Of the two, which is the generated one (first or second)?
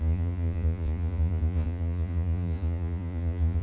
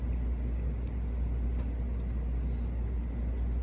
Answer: first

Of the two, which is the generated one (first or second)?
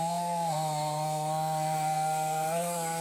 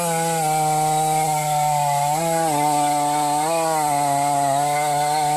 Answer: first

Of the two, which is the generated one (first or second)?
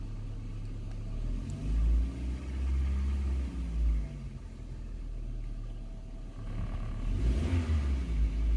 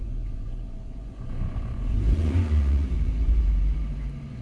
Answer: second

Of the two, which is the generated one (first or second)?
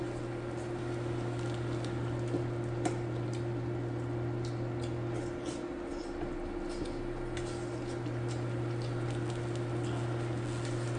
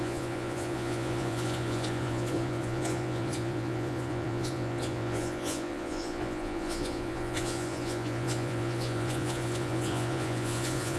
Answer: second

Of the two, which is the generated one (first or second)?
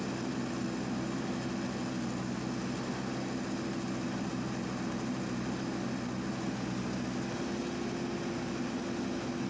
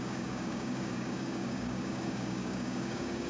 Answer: second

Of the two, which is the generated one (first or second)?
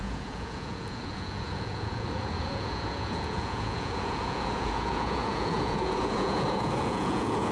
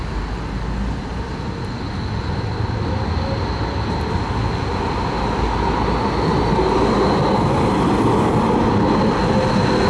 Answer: first